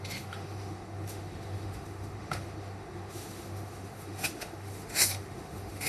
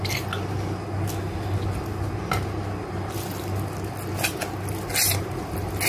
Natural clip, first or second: second